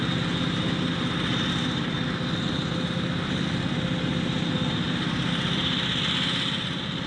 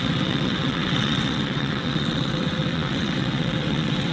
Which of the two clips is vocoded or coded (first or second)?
second